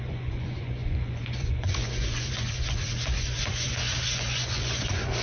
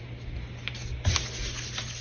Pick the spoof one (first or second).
first